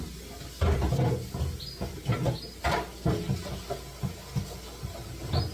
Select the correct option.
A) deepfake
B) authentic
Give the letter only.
B